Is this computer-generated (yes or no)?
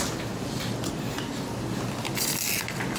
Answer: no